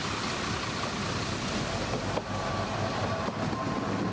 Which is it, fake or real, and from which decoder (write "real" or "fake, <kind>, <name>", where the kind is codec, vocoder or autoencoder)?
real